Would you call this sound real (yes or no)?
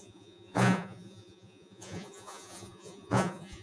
no